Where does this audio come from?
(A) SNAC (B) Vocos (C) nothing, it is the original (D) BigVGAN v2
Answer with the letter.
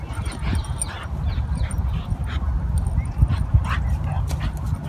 C